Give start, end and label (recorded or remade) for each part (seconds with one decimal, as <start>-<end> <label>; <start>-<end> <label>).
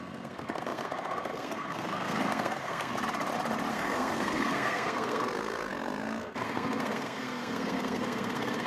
0.0-2.9 remade; 2.9-3.7 recorded; 3.7-8.7 remade